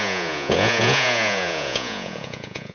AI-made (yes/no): yes